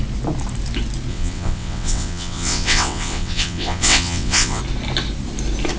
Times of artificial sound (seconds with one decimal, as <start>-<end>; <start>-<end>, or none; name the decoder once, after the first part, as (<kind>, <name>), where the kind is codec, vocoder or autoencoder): 1.1-4.6 (vocoder, WaveNeXt)